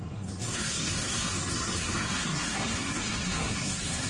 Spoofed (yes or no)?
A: yes